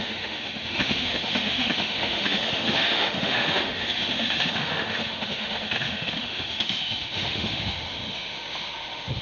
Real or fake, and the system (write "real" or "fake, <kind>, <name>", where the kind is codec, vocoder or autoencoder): fake, autoencoder, DAC-VAE